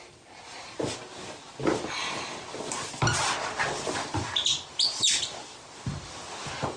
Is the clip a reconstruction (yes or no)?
no